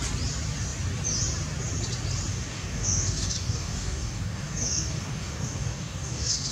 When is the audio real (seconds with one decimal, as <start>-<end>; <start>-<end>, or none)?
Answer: 0.0-2.3